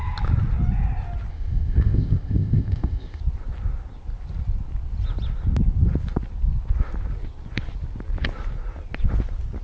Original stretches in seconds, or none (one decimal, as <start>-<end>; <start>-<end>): 0.0-1.3; 3.2-9.6